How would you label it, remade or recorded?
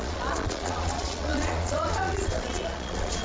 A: remade